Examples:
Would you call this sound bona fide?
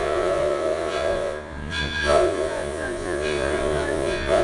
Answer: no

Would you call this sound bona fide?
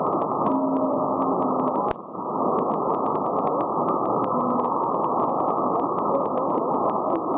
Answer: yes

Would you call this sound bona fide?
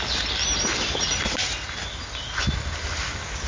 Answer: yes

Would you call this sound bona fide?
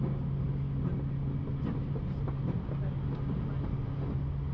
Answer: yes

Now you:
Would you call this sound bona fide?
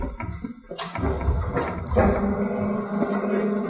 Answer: yes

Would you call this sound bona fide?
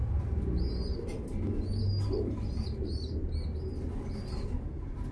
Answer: yes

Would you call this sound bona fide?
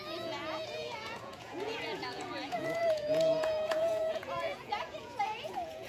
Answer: no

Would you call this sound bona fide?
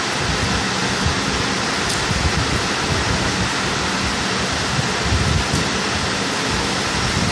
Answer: yes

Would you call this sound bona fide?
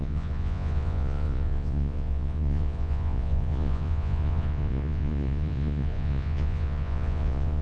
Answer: no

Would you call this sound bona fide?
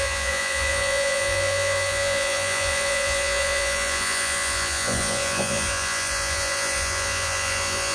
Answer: no